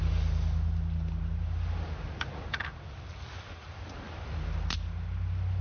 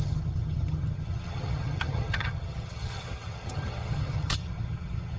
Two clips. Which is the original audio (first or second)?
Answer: first